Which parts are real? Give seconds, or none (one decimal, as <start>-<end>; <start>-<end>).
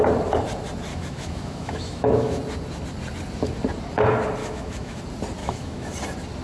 0.0-0.9; 2.4-4.4; 5.0-5.4; 5.9-6.4